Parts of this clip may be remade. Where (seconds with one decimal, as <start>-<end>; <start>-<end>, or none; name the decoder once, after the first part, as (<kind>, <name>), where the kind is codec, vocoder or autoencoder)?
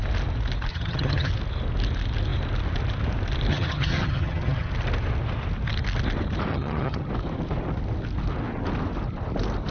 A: 0.7-1.3 (vocoder, HiFi-GAN); 3.5-4.7; 6.5-7.1